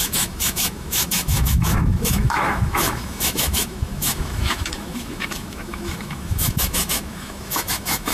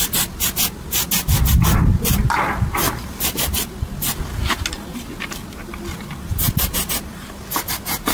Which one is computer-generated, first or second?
first